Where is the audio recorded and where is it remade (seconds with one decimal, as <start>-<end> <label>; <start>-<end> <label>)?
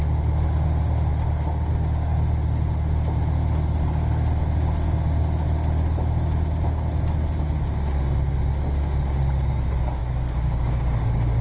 0.0-10.0 recorded; 10.0-11.4 remade